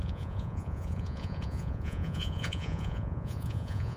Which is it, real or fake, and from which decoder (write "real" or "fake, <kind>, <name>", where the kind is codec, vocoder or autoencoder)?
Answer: fake, vocoder, Vocos